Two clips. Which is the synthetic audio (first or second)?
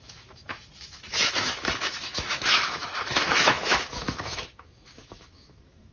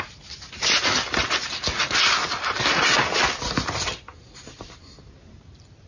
first